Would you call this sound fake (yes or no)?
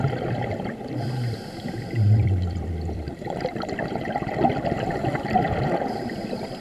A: yes